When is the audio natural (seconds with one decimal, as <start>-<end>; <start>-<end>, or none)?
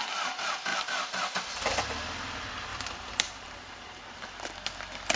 0.0-0.7; 1.3-2.7; 4.5-5.2